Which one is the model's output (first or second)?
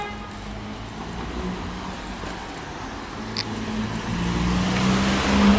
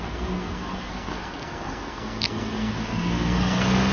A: second